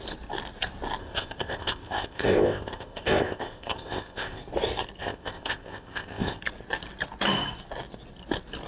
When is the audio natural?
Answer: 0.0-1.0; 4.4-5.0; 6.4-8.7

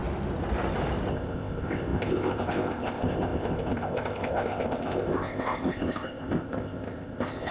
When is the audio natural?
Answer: 0.0-1.1

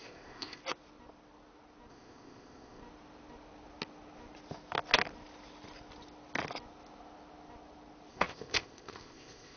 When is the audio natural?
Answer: 0.6-1.9; 2.8-8.1